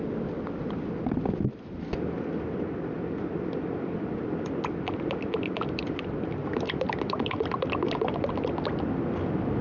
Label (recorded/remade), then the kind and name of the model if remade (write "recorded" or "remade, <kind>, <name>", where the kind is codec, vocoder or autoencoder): remade, vocoder, BigVGAN v2